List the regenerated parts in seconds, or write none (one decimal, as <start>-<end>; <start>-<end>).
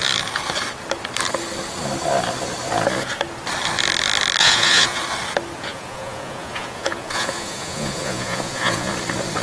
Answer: 4.4-5.0; 5.7-8.9